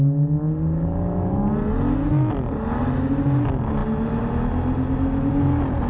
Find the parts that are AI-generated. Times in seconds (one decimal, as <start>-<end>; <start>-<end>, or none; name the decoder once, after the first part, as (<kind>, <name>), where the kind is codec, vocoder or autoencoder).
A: none